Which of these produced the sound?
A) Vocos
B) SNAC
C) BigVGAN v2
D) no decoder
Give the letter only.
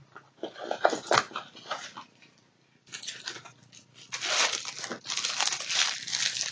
D